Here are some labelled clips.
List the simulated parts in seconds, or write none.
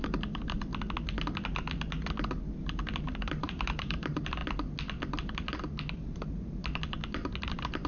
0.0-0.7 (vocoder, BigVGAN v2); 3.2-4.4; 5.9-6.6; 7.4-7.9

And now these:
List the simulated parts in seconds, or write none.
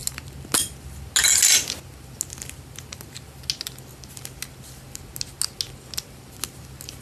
none